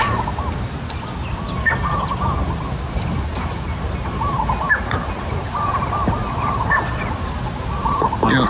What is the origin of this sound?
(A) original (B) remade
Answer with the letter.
A